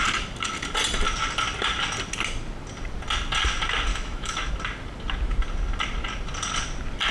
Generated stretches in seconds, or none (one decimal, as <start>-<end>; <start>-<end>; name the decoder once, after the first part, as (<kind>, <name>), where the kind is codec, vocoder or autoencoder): 3.9-4.5 (autoencoder, DAC-VAE)